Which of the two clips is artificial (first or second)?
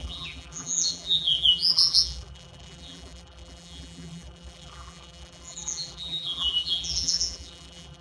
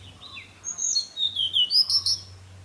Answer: first